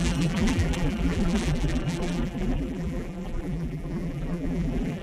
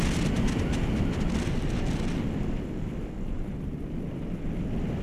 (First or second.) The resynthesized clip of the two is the first